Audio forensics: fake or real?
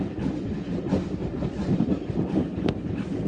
real